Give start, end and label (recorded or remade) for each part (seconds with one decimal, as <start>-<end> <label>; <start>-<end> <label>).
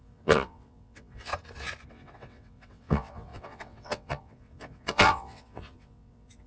0.0-1.3 remade; 1.3-1.9 recorded; 1.9-6.5 remade